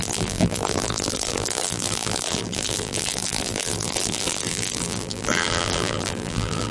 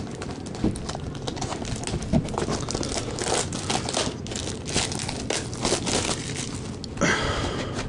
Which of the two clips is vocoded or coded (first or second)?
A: first